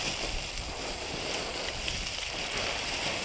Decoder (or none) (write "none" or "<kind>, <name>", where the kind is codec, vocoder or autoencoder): none